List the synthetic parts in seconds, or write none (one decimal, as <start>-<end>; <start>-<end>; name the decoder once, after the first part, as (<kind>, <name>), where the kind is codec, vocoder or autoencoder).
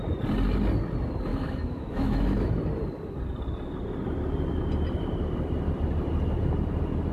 1.3-2.5 (autoencoder, DAC-VAE)